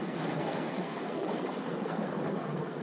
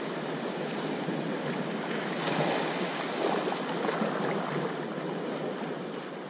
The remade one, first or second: first